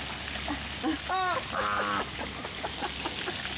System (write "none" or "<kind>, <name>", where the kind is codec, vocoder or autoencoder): none